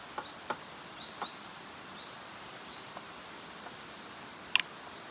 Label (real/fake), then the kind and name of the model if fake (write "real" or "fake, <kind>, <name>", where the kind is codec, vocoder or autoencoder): real